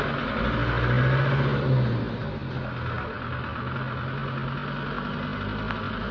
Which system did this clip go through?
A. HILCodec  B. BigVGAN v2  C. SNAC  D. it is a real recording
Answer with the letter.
D